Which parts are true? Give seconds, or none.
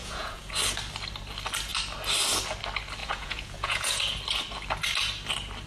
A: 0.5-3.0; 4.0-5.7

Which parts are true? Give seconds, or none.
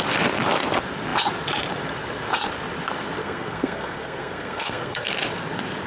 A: 0.0-3.2; 5.1-5.9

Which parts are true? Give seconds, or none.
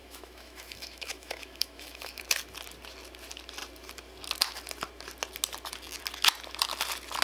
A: 2.2-7.2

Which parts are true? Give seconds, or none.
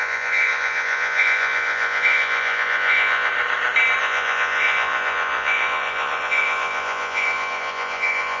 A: 3.3-4.0